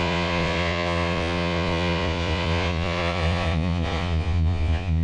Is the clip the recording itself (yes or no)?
no